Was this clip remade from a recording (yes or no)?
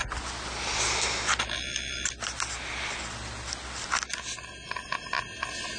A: no